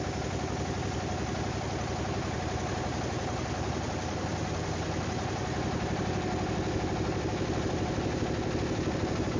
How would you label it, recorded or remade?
recorded